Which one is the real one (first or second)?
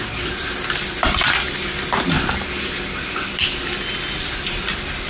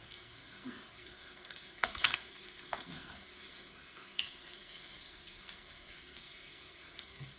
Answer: first